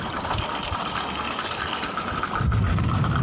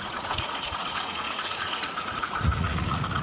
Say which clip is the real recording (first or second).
first